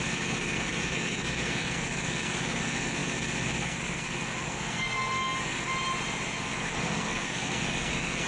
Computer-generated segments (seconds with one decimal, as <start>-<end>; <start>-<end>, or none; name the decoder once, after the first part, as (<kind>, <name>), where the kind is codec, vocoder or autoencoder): 0.0-5.7 (codec, SNAC); 6.4-8.3